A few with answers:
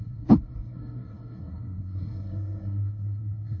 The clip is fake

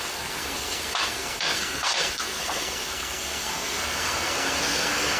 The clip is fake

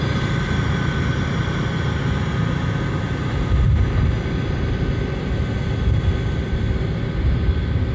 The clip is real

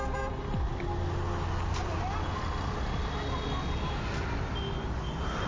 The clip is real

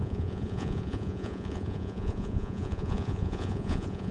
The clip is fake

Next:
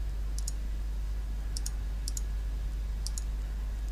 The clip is real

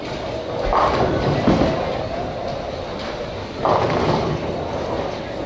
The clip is real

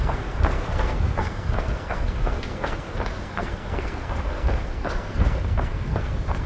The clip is fake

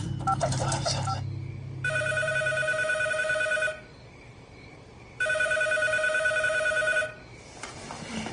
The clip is fake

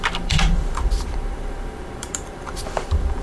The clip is fake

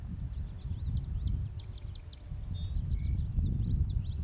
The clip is real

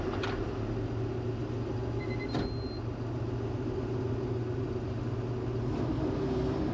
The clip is real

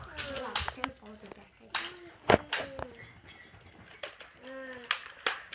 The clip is real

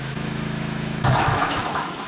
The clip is fake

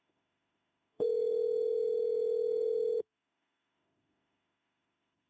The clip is fake